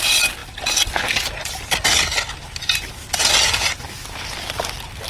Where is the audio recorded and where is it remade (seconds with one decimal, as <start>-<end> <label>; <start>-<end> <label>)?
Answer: 0.0-5.1 recorded